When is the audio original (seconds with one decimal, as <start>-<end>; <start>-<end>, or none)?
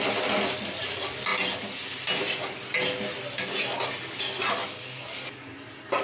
0.0-4.6; 5.5-6.0